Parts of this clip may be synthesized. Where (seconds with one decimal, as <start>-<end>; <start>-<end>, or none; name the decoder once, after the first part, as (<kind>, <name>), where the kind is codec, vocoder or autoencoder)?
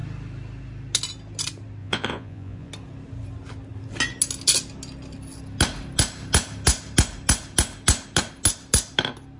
1.8-2.7 (vocoder, Vocos)